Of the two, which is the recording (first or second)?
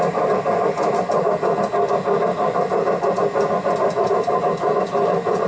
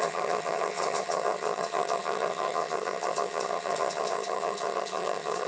first